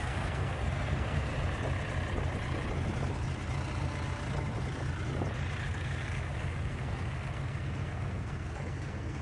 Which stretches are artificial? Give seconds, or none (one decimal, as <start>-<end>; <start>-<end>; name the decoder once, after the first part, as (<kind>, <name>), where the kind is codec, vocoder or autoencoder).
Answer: 0.0-1.3 (codec, SNAC); 5.7-9.2

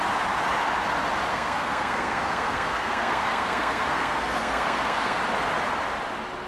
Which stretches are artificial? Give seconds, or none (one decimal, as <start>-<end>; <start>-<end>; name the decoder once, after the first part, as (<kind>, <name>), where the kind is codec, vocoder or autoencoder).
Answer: 1.3-5.2 (codec, SNAC)